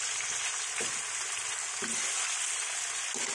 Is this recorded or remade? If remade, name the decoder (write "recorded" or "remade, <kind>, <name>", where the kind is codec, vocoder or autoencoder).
recorded